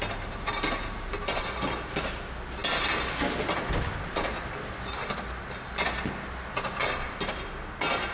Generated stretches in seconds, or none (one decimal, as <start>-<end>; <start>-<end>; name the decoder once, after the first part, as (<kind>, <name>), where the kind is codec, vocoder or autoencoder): none